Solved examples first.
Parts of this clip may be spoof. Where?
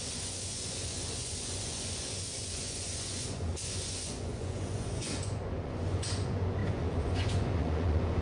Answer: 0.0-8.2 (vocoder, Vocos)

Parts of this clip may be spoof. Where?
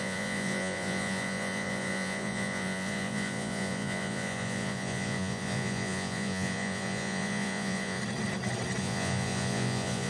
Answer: 0.0-8.0 (vocoder, Vocos); 8.8-10.1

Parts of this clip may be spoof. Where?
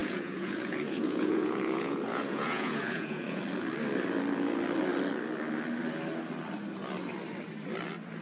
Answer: 0.0-3.4 (vocoder, Vocos)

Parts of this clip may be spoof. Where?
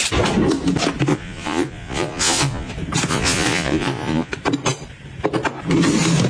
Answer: 1.1-2.7 (vocoder, Vocos); 3.1-4.3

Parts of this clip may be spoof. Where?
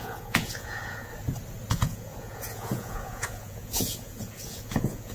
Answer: 0.0-1.1 (vocoder, Vocos); 1.7-5.1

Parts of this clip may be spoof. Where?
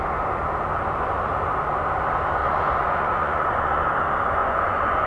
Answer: 2.4-3.8 (vocoder, Vocos); 4.4-5.1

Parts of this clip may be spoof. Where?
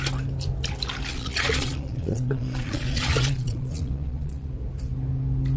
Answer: 1.1-4.5 (vocoder, Vocos)